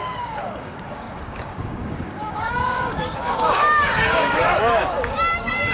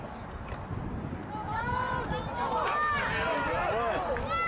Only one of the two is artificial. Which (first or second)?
first